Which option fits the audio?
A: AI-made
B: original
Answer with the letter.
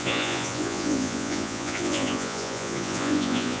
A